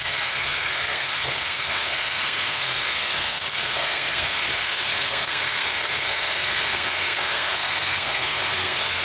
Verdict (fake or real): fake